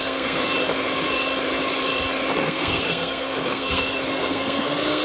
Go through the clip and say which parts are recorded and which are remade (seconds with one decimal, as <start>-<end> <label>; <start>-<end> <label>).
0.0-0.4 remade; 0.4-2.4 recorded; 2.4-5.0 remade